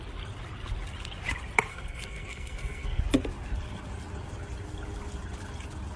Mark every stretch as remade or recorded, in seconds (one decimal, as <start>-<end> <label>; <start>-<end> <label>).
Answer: 0.0-1.7 recorded; 1.7-3.0 remade; 3.0-6.0 recorded

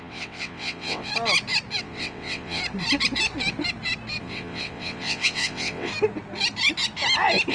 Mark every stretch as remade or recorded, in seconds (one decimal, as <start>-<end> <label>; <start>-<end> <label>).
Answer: 0.0-1.1 remade; 1.1-1.8 recorded; 1.8-2.6 remade; 2.6-4.2 recorded; 4.2-5.9 remade; 5.9-7.5 recorded

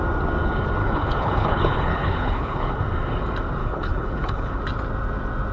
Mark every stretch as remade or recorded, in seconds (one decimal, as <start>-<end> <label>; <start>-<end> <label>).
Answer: 0.0-0.8 recorded; 0.8-2.7 remade; 2.7-3.6 recorded; 3.6-4.6 remade; 4.6-5.5 recorded